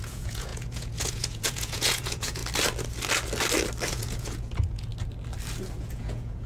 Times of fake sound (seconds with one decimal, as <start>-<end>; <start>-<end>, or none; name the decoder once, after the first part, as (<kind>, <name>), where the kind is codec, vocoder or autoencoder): 0.0-2.4 (vocoder, Vocos); 3.9-4.9; 5.8-6.5